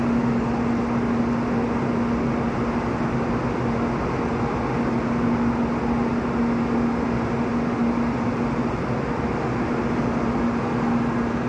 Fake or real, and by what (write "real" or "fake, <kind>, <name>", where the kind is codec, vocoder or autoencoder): real